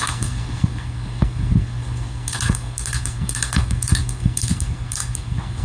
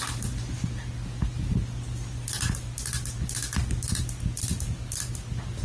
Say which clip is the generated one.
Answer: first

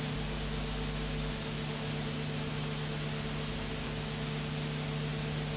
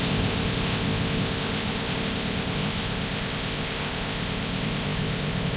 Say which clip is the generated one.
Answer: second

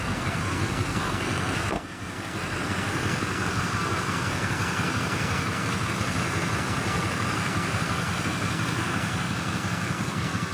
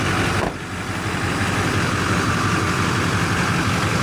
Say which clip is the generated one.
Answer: first